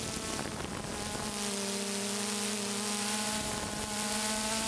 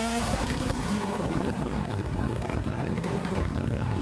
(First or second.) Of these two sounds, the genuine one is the first